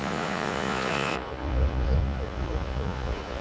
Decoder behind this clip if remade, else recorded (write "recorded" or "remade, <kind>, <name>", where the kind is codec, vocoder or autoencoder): remade, vocoder, Vocos